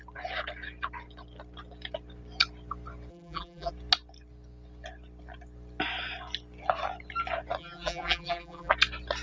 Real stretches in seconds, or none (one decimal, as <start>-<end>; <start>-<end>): 0.0-3.1; 3.7-7.6; 8.7-9.2